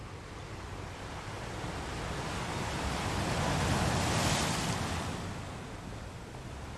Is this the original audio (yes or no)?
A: yes